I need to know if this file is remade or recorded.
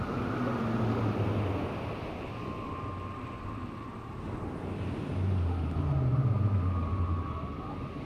recorded